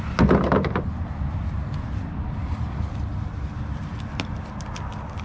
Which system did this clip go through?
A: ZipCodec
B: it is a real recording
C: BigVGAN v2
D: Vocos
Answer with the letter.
B